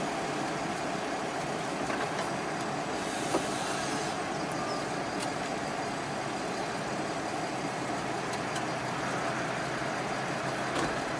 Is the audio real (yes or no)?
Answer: yes